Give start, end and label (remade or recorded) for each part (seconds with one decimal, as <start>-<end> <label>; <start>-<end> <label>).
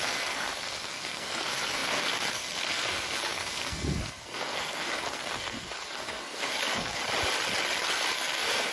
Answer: 0.0-7.0 remade; 7.0-7.9 recorded; 7.9-8.7 remade